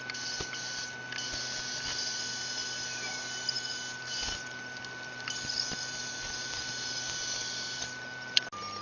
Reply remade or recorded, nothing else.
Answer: recorded